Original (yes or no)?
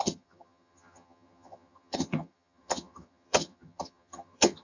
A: no